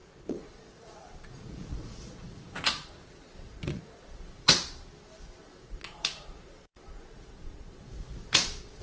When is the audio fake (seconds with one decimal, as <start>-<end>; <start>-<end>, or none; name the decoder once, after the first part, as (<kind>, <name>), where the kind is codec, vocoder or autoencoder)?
0.0-4.6 (vocoder, Vocos); 5.4-8.8